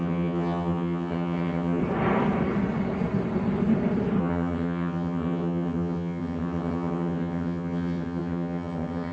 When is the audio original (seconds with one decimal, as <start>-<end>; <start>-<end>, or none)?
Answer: 1.8-4.2